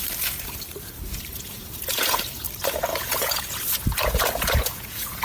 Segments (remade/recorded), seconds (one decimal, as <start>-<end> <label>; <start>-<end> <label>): 0.0-1.3 recorded; 1.3-2.4 remade; 2.4-2.9 recorded; 2.9-5.2 remade